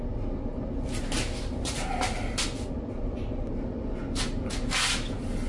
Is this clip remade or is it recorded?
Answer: recorded